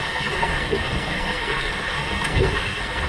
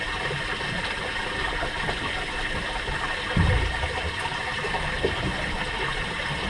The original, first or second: second